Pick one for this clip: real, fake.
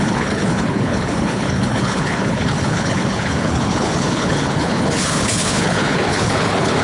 fake